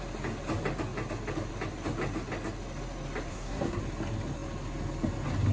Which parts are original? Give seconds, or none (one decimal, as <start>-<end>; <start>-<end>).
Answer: 0.0-3.3; 3.8-5.5